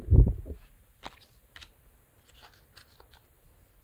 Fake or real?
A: real